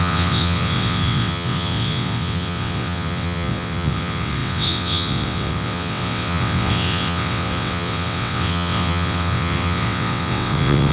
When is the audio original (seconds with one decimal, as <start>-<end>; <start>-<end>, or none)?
none